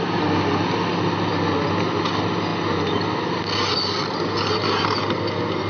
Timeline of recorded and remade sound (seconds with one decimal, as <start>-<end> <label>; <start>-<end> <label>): 0.0-5.7 recorded